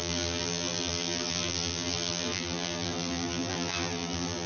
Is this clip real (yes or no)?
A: no